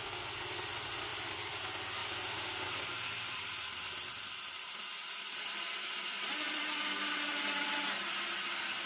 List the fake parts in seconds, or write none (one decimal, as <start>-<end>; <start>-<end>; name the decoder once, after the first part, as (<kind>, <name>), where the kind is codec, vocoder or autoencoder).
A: 1.1-1.6 (vocoder, BigVGAN v2); 2.0-6.6

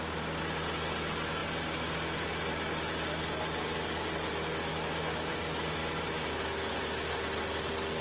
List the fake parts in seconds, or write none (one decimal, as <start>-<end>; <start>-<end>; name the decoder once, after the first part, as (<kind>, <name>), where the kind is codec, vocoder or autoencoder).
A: 4.7-5.3 (autoencoder, DAC-VAE); 5.8-6.4

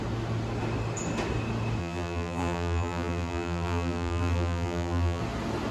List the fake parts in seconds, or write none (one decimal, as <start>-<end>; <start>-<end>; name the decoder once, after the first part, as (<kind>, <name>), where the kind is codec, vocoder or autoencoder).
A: 1.8-5.2 (vocoder, BigVGAN v2)

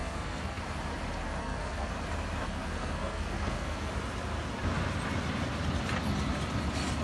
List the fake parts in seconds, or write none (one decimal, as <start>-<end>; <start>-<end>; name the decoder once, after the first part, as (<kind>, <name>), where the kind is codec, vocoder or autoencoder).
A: 0.0-0.6 (codec, SNAC); 1.4-1.9; 2.5-3.9

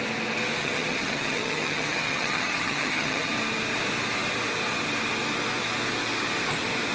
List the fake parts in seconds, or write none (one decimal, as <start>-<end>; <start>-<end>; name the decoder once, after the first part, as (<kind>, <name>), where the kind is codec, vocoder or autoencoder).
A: 0.6-3.3 (vocoder, HiFi-GAN)

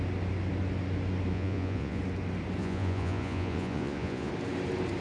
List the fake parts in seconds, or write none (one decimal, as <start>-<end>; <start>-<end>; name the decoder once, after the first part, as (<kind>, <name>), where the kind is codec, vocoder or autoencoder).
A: 1.3-2.0 (vocoder, Vocos); 2.6-4.3

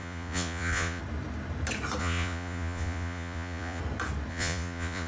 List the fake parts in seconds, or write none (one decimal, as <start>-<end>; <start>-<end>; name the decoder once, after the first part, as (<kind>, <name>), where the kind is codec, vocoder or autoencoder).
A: 0.0-1.0 (vocoder, Vocos); 2.0-3.8; 4.3-5.1

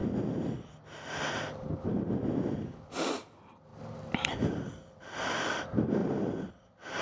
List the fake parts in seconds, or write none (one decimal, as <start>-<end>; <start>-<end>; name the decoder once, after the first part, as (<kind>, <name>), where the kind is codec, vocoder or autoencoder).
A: 1.3-3.7 (vocoder, BigVGAN v2); 4.5-6.0; 6.5-7.0